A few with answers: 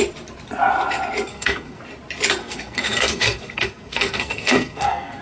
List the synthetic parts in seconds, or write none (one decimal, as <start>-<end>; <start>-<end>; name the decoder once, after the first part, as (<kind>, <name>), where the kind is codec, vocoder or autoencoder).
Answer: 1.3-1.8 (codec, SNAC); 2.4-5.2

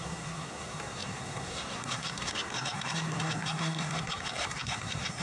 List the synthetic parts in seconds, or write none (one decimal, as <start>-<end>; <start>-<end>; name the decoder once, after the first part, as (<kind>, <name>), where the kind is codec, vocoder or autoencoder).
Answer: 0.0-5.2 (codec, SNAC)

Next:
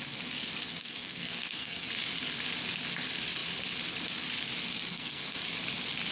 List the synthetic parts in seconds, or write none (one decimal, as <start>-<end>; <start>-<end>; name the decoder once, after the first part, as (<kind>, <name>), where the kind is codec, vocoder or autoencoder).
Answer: 0.8-1.9 (codec, SNAC); 4.9-5.4